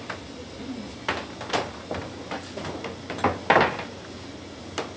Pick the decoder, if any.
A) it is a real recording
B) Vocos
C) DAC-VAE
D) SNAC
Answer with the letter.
A